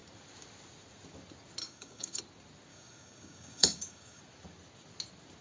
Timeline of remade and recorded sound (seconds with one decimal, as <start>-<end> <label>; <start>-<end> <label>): 0.0-1.6 recorded; 1.6-2.2 remade; 2.2-2.7 recorded; 2.7-4.2 remade; 4.2-5.4 recorded